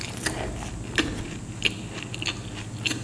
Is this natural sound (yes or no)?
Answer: yes